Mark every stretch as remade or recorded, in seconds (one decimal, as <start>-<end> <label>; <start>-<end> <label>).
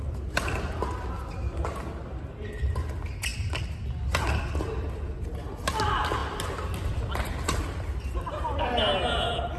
0.0-9.6 recorded